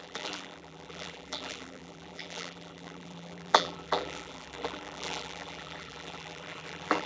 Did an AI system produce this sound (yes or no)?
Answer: yes